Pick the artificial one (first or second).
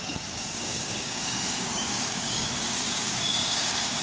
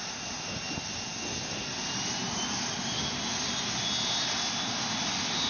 first